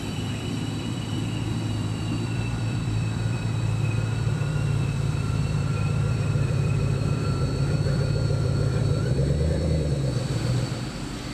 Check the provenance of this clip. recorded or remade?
remade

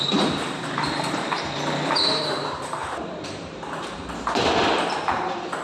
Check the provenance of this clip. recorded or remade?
remade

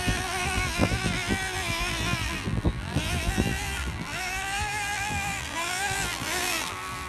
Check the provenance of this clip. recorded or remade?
remade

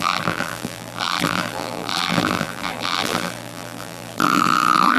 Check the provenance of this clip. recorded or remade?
remade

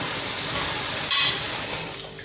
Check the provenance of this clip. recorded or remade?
recorded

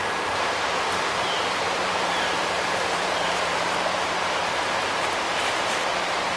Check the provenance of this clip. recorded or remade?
remade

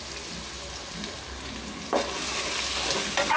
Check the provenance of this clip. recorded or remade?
recorded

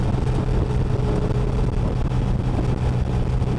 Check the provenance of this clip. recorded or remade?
recorded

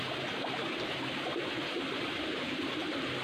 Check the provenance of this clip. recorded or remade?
remade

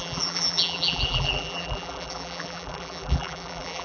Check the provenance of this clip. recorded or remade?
remade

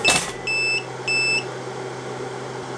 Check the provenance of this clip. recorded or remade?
recorded